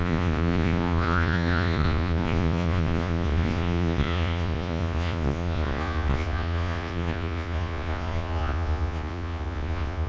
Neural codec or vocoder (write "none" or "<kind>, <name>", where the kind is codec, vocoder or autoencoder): vocoder, Vocos